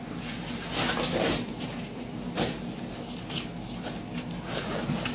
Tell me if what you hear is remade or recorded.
recorded